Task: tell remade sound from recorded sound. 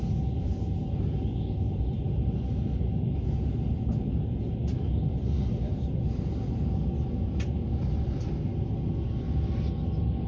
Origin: recorded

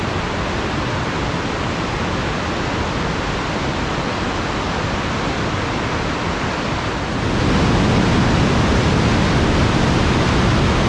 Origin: recorded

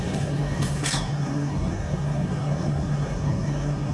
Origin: remade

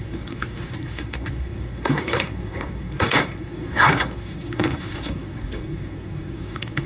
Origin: remade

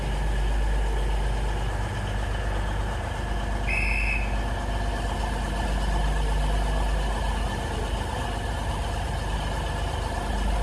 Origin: recorded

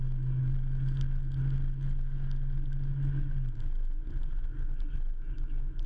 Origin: recorded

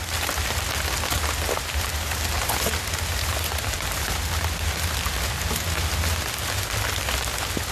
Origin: recorded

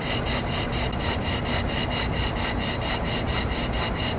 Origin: recorded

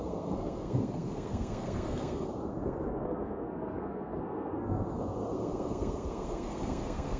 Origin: remade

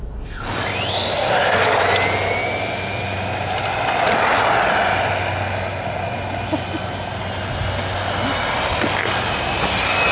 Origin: recorded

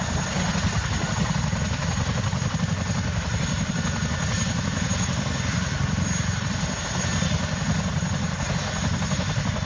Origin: recorded